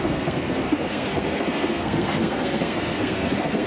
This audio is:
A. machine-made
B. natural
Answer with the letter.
A